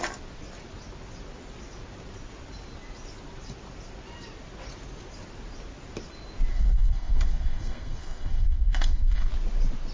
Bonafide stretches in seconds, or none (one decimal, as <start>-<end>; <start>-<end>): 0.0-6.5; 9.3-9.9